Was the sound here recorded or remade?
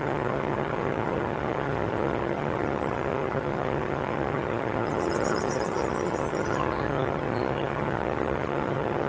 remade